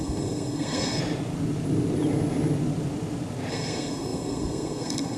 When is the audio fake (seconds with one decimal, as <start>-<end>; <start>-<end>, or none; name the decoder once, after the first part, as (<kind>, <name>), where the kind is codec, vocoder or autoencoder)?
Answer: 0.0-1.0 (codec, SNAC); 3.5-5.2